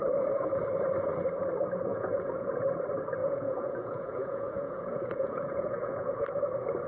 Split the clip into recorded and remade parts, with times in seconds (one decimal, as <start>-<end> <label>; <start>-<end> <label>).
0.0-1.9 recorded; 1.9-2.5 remade; 2.5-3.2 recorded; 3.2-6.2 remade; 6.2-6.9 recorded

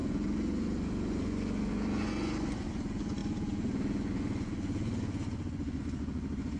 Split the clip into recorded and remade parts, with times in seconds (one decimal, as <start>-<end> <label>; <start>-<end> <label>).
0.0-6.6 remade

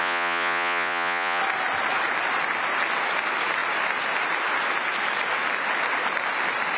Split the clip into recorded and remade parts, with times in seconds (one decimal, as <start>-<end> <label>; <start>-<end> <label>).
0.0-1.4 remade; 1.4-6.8 recorded

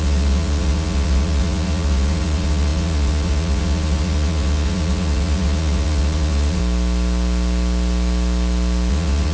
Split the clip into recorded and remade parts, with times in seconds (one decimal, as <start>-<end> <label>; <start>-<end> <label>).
0.0-6.6 remade; 6.6-8.9 recorded; 8.9-9.3 remade